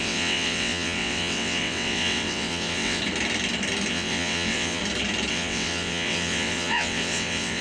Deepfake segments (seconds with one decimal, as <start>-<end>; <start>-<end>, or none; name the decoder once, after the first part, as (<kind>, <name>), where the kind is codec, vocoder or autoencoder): 0.0-3.0 (vocoder, WaveNeXt); 3.9-4.8; 5.3-7.6